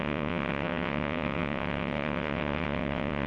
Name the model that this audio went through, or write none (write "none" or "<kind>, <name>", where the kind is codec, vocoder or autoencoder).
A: vocoder, WaveNeXt